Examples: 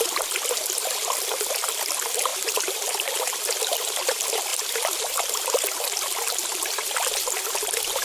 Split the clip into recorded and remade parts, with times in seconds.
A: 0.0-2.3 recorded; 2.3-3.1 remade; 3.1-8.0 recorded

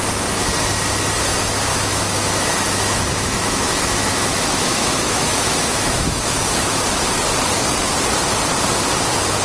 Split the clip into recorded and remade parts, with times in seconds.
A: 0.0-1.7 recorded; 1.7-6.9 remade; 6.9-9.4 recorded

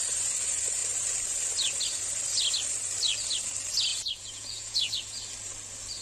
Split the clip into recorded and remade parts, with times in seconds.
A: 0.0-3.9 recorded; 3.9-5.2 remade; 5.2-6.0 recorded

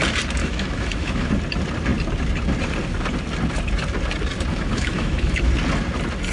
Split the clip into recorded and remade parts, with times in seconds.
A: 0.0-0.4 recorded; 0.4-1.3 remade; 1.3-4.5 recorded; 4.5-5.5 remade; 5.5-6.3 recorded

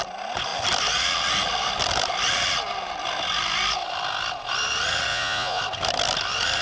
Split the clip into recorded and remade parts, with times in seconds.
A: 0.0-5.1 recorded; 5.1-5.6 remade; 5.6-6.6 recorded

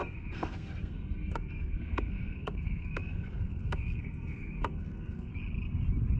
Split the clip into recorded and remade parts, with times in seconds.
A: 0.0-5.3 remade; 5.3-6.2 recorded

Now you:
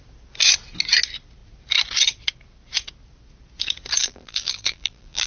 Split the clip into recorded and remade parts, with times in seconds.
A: 0.0-4.0 recorded; 4.0-5.3 remade